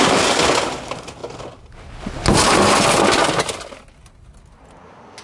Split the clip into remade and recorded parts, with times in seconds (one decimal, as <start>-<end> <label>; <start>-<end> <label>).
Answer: 0.0-5.2 recorded